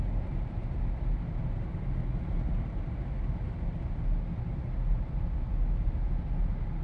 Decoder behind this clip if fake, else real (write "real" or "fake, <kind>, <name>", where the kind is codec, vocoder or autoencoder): real